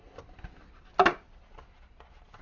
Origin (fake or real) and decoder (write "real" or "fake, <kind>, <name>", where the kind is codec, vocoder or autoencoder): real